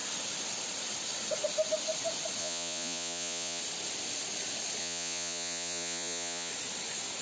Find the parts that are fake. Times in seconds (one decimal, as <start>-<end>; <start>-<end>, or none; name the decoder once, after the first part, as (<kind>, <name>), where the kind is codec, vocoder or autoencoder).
2.4-3.6 (vocoder, Vocos); 4.8-6.5